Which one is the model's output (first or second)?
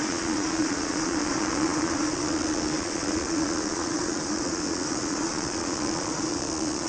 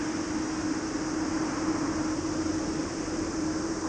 first